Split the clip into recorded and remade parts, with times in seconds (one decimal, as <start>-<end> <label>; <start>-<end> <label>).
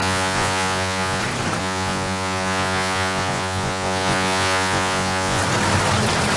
0.0-1.2 remade; 1.2-1.6 recorded; 1.6-5.4 remade; 5.4-6.4 recorded